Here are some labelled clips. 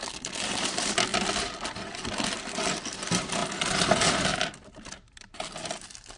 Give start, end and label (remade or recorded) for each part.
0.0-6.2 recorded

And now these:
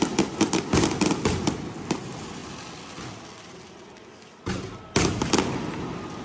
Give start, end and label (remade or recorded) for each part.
0.0-6.2 recorded

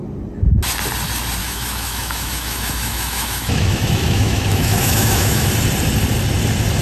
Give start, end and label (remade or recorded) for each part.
0.0-1.4 recorded; 1.4-5.5 remade; 5.5-6.8 recorded

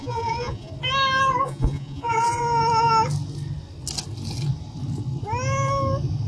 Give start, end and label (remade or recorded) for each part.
0.0-0.7 remade; 0.7-1.4 recorded; 1.4-2.4 remade; 2.4-6.3 recorded

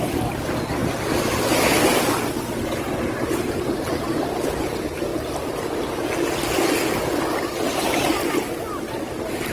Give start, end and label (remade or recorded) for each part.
0.0-0.8 remade; 0.8-2.9 recorded; 2.9-5.1 remade; 5.1-8.9 recorded; 8.9-9.5 remade